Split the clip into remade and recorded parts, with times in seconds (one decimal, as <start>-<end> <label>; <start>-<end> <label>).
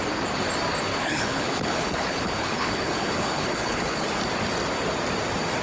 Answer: 0.0-0.9 recorded; 0.9-4.2 remade; 4.2-5.6 recorded